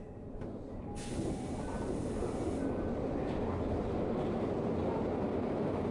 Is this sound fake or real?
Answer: real